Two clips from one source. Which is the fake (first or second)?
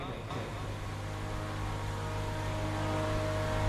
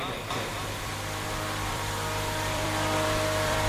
second